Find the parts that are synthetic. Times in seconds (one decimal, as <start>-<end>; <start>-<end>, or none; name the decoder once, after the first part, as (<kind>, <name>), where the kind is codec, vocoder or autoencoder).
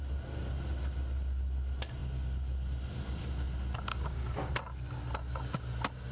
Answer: 3.9-4.5 (codec, DAC)